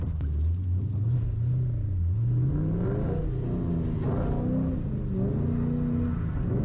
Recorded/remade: recorded